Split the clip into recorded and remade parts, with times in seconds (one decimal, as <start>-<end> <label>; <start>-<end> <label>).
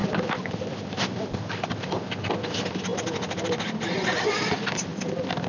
0.0-2.3 remade; 2.3-4.9 recorded; 4.9-5.5 remade